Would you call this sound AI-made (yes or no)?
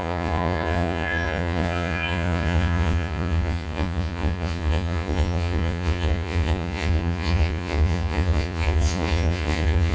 yes